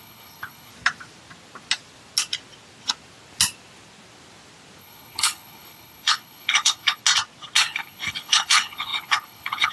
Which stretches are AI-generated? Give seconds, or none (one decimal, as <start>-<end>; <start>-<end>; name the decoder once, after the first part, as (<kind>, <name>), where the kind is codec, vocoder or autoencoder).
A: 0.0-0.7 (codec, HILCodec); 4.8-7.0; 7.6-9.7